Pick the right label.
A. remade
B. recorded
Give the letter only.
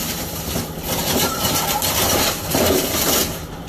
A